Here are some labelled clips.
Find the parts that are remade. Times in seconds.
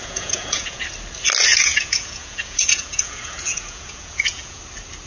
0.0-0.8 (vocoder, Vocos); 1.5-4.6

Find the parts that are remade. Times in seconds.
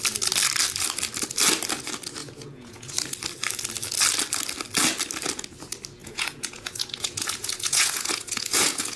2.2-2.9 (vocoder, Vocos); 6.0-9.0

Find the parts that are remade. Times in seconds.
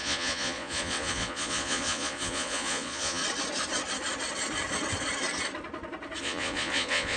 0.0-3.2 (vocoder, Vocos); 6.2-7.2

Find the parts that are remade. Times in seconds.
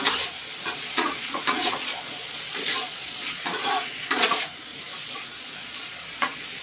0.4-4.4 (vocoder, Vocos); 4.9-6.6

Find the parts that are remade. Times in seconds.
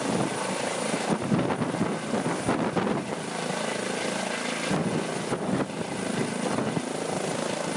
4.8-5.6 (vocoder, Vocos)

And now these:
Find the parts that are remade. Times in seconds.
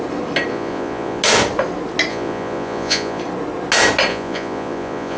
0.5-1.2 (vocoder, Vocos); 2.1-3.2; 4.1-5.2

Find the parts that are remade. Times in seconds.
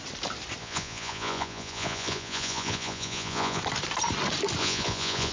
0.6-3.6 (vocoder, Vocos); 4.6-5.3